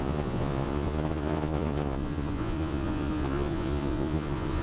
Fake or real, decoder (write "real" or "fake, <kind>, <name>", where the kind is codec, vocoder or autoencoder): fake, vocoder, Vocos